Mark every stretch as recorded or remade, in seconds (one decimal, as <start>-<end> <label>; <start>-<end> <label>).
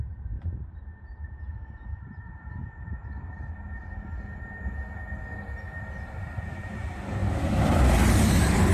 0.0-3.0 remade; 3.0-5.8 recorded; 5.8-7.2 remade; 7.2-7.9 recorded; 7.9-8.7 remade